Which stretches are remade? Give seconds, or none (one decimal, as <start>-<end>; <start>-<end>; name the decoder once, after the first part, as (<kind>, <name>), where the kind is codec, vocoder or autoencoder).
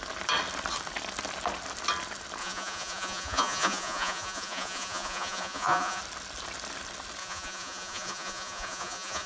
2.4-6.0 (vocoder, Vocos); 7.2-9.3